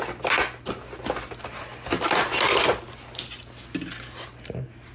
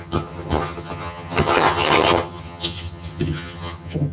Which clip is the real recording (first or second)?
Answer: first